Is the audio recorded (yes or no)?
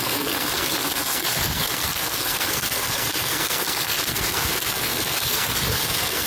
no